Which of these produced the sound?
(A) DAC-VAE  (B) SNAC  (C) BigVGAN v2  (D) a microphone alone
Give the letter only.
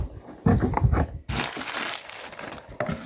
D